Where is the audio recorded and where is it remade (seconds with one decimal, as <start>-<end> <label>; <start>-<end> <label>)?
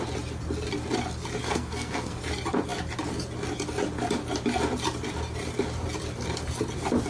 0.0-1.4 recorded; 1.4-2.2 remade; 2.2-7.1 recorded